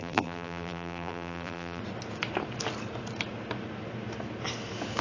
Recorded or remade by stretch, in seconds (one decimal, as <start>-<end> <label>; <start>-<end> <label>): 0.0-1.8 remade; 1.8-5.0 recorded